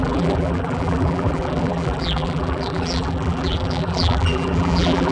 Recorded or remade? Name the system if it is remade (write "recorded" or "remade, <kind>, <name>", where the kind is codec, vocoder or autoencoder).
remade, vocoder, BigVGAN v2